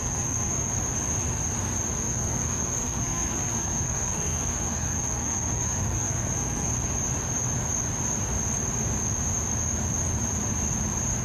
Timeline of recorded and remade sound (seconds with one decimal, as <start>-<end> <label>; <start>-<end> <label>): 0.0-0.7 remade; 0.7-2.0 recorded; 2.0-6.7 remade; 6.7-11.2 recorded